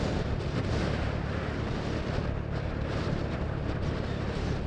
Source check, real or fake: fake